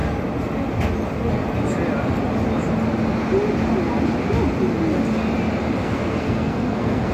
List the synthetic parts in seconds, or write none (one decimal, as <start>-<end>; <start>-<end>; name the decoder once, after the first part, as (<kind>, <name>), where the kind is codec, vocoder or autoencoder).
5.8-7.1 (codec, SNAC)